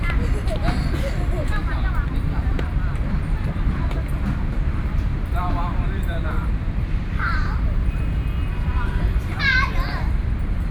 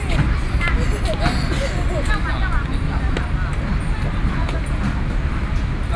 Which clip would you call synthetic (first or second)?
first